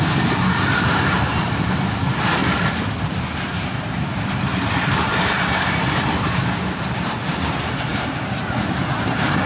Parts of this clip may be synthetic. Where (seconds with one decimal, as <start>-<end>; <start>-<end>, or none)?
0.0-9.5